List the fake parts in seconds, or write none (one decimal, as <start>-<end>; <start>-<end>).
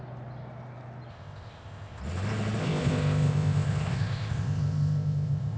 1.1-2.0; 2.6-5.6